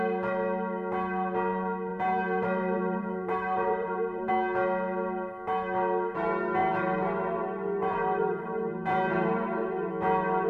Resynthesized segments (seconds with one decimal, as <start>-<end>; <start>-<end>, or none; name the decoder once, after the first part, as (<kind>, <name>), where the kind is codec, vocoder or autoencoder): 1.9-4.3 (vocoder, BigVGAN v2); 6.6-9.9